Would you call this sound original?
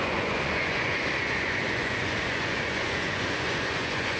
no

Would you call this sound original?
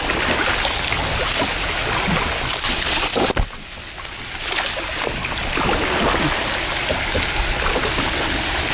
yes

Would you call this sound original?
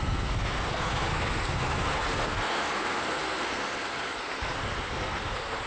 no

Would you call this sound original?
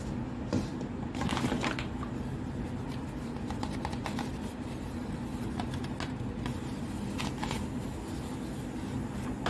yes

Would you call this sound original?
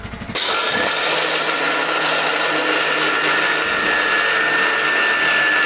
yes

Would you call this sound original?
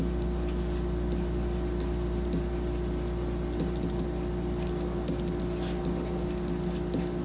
yes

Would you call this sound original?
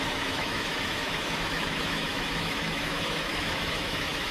no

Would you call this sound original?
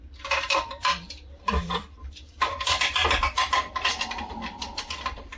no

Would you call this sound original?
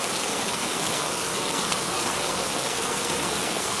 no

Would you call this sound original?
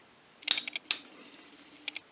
yes